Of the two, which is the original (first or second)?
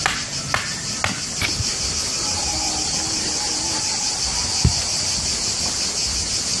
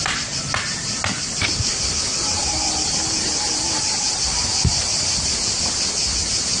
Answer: first